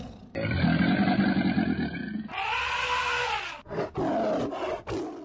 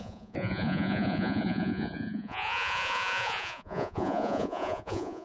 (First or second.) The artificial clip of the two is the second